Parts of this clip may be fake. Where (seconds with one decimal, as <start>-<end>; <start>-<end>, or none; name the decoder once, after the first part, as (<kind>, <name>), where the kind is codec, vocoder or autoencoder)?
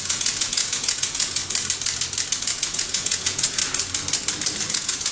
0.0-1.4 (vocoder, Vocos); 2.4-3.6; 4.6-5.1